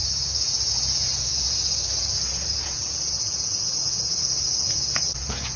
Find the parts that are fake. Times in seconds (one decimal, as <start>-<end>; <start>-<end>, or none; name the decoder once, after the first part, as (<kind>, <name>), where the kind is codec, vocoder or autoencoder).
0.0-5.6 (vocoder, Vocos)